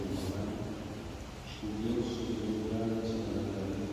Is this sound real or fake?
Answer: real